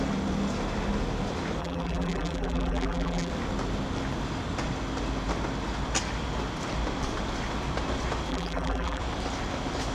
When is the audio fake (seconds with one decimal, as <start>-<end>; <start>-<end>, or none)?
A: 1.6-3.3; 8.3-9.0

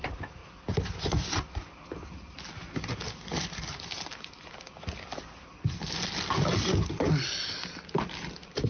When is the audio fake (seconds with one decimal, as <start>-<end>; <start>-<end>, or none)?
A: none

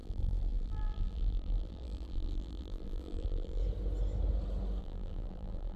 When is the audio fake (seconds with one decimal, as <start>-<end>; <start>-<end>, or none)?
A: 0.0-3.6; 4.8-5.8